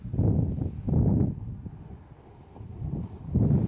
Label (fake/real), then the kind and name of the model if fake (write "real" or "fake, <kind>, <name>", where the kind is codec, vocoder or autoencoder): real